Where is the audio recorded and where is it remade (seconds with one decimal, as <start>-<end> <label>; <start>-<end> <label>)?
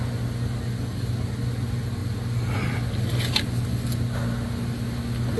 0.0-5.4 recorded